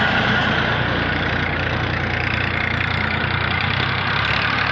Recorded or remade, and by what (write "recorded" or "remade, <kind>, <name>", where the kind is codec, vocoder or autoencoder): remade, vocoder, BigVGAN v2